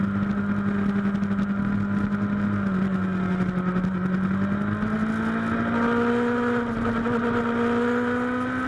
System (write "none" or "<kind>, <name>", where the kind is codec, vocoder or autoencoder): none